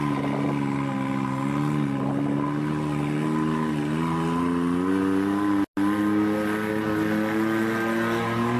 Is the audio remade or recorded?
recorded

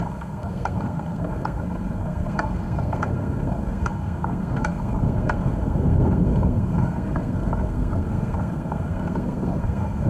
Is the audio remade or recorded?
remade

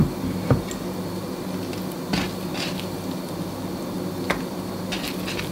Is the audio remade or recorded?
recorded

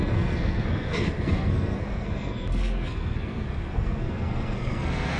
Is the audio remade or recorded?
remade